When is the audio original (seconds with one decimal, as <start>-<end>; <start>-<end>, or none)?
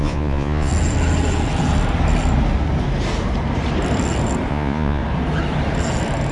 0.7-4.5; 5.0-6.3